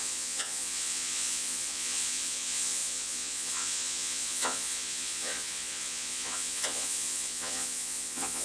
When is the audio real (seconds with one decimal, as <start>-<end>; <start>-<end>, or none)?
none